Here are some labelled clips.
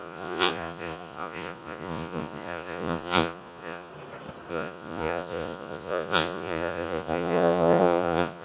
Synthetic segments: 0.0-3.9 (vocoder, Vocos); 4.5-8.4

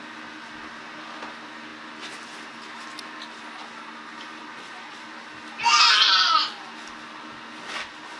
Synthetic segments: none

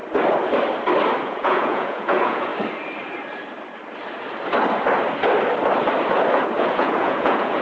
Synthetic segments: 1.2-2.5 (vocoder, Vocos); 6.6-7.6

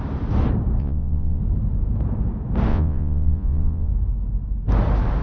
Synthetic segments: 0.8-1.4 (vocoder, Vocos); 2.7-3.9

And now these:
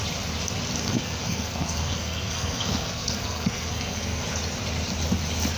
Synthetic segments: 0.8-4.2 (codec, SNAC)